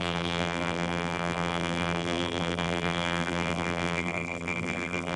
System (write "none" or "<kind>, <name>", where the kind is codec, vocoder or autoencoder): vocoder, BigVGAN v2